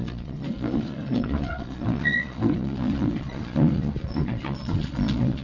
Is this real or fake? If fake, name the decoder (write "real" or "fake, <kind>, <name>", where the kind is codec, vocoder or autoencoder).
fake, vocoder, Vocos